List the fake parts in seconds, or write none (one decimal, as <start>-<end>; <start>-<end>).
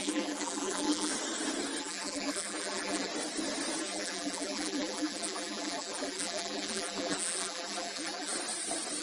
0.0-1.1; 1.8-3.1; 3.8-8.3